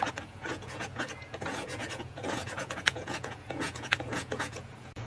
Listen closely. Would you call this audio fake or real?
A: fake